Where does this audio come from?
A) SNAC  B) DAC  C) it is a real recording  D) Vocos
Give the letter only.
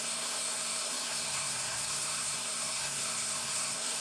A